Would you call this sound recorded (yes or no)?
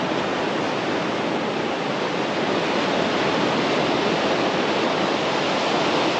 yes